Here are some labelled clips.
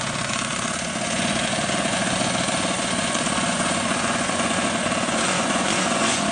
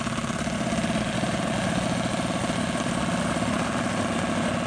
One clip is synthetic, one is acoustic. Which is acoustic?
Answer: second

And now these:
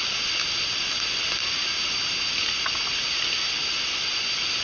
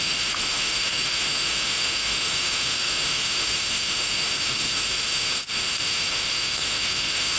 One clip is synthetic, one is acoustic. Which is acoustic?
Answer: first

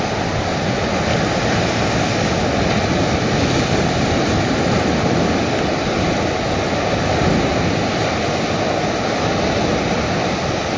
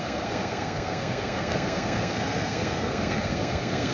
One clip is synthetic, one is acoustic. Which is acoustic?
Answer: first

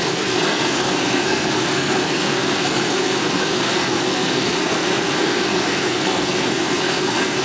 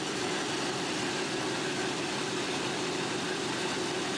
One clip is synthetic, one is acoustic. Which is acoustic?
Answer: second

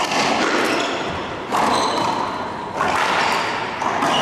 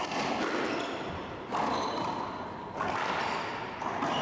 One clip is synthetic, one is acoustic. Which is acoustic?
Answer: first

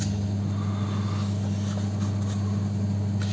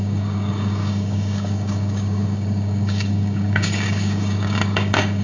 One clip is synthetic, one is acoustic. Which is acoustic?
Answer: first